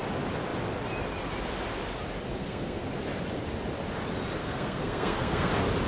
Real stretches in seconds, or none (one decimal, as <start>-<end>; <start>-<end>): 0.0-2.3; 2.8-4.4; 5.5-5.9